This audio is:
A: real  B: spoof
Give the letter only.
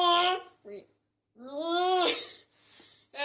A